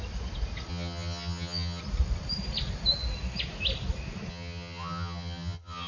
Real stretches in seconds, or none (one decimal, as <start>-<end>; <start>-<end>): 0.0-0.7; 1.8-4.3